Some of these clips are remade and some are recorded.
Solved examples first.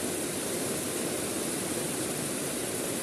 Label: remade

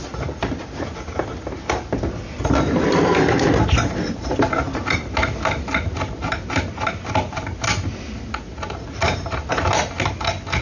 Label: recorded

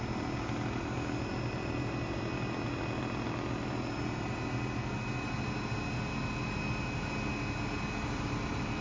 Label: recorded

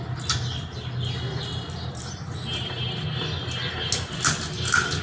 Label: recorded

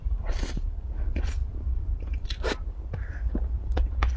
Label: remade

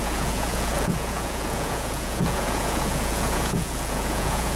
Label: remade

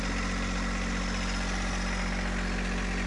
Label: recorded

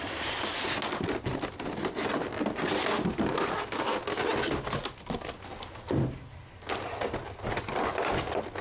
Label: recorded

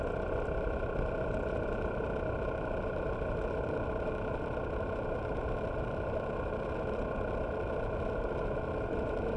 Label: recorded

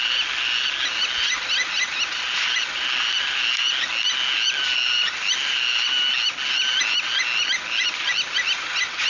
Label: recorded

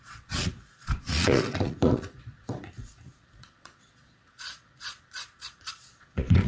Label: remade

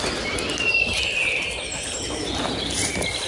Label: recorded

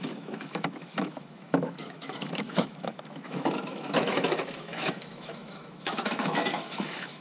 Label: remade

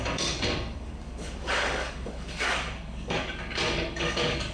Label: remade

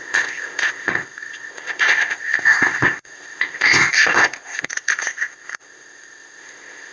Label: remade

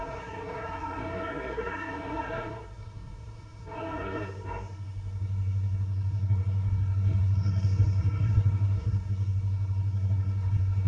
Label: remade